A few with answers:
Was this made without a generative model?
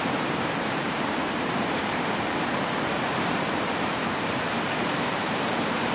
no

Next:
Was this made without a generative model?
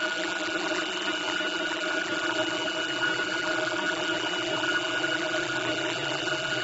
no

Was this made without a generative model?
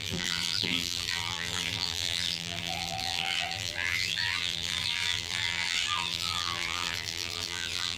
no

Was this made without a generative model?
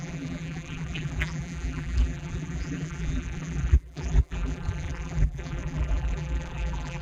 no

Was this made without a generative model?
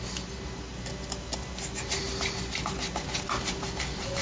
yes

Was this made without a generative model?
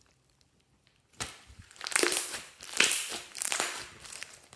no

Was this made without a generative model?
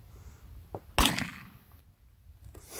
yes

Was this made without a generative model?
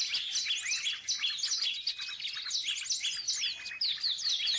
yes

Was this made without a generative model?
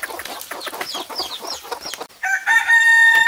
yes